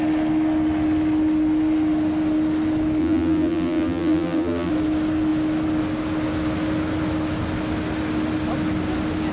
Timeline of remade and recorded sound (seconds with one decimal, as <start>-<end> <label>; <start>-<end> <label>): 0.0-3.0 recorded; 3.0-4.7 remade; 4.7-9.3 recorded